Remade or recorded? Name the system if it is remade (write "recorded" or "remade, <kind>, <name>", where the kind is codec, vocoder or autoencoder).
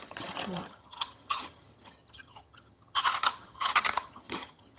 remade, vocoder, HiFi-GAN